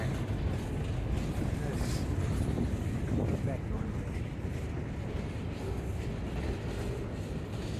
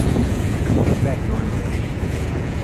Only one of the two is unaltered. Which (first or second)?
first